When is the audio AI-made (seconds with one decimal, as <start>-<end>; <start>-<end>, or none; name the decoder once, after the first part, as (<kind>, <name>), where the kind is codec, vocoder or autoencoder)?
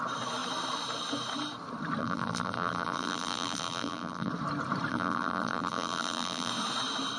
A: 2.0-4.3 (vocoder, BigVGAN v2); 4.9-6.5